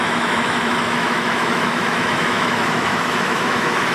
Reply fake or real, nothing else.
fake